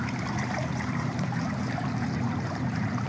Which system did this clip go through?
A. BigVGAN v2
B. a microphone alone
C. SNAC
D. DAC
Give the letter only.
A